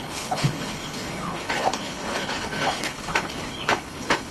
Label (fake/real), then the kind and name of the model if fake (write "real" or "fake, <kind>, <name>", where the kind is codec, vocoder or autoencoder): fake, codec, HILCodec